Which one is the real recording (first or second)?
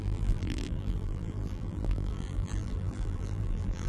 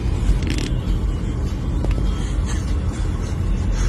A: second